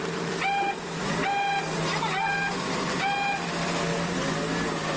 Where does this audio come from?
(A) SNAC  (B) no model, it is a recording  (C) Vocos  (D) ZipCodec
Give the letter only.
B